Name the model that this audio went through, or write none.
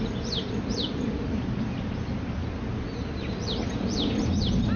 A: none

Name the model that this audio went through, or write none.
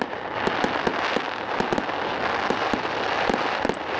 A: none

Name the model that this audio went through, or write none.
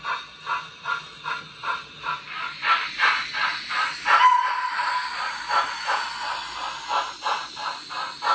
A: none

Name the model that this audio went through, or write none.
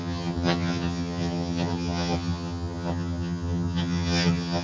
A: vocoder, HiFi-GAN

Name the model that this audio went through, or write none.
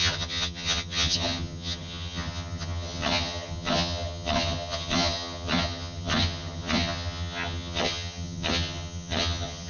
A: vocoder, HiFi-GAN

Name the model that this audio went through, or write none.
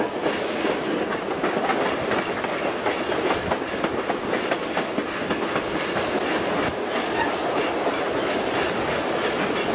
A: none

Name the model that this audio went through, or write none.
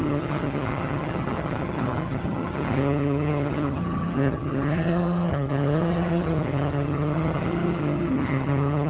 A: vocoder, HiFi-GAN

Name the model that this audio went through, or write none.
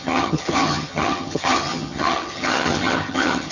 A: vocoder, HiFi-GAN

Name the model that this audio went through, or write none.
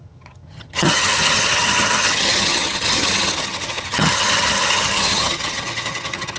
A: vocoder, HiFi-GAN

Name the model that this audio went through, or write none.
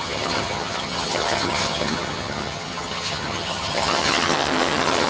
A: vocoder, HiFi-GAN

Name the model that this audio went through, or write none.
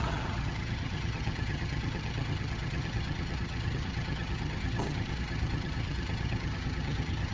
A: vocoder, HiFi-GAN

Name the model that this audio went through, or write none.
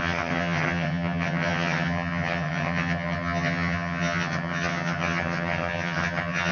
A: vocoder, HiFi-GAN